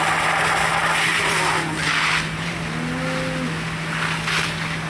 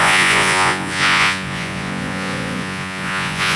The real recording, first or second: first